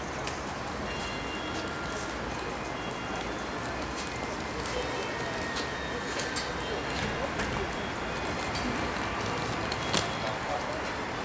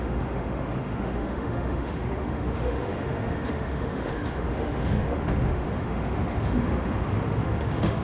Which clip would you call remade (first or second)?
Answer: second